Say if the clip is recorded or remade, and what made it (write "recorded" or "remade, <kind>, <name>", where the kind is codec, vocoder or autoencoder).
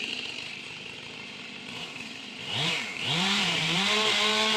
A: remade, vocoder, BigVGAN v2